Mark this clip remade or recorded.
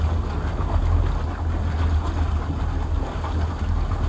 recorded